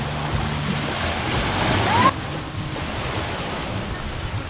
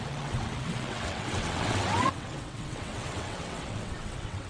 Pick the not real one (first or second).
second